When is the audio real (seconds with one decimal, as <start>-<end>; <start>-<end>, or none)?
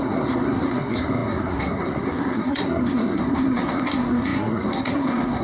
none